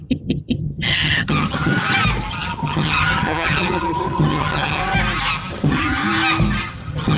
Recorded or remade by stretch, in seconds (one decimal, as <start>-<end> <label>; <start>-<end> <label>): 0.0-1.7 remade; 1.7-2.3 recorded; 2.3-4.8 remade; 4.8-5.5 recorded; 5.5-6.0 remade; 6.0-6.6 recorded; 6.6-7.2 remade